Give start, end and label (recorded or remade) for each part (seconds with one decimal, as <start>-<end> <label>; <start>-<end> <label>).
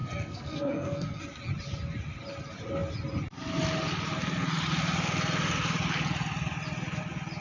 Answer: 0.0-1.2 remade; 1.2-7.4 recorded